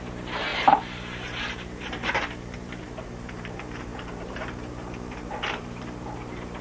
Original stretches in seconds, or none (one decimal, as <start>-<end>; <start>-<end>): none